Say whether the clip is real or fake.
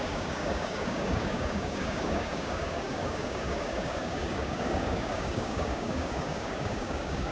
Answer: fake